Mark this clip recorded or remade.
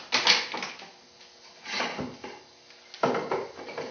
recorded